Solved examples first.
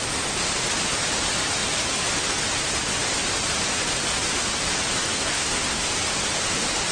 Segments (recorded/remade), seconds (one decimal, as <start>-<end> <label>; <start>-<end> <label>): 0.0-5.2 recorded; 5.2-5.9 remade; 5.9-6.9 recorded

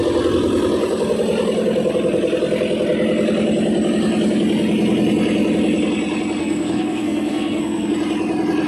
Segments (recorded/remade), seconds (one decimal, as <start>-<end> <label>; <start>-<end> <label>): 0.0-6.4 recorded; 6.4-7.9 remade; 7.9-8.7 recorded

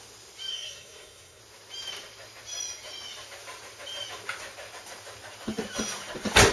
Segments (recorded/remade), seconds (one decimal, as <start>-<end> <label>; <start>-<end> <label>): 0.0-0.5 recorded; 0.5-1.4 remade; 1.4-6.5 recorded